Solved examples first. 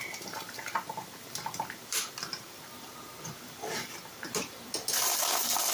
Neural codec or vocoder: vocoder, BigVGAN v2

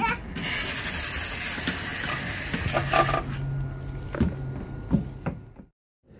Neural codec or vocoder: none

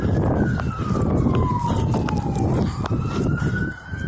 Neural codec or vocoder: none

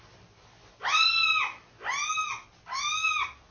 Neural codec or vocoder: none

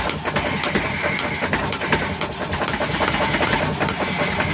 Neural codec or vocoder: none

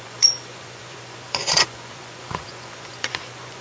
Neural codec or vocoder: vocoder, Vocos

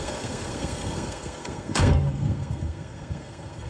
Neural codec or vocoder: codec, SNAC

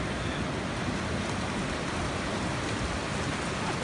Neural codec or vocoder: none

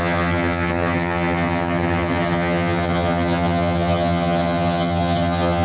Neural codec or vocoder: vocoder, HiFi-GAN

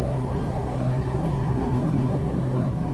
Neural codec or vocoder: codec, SNAC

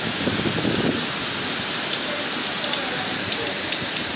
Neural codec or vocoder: none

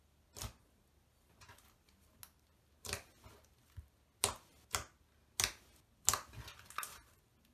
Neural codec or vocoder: none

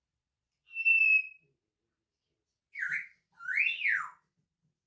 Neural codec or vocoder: vocoder, BigVGAN v2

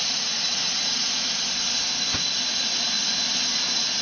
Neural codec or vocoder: none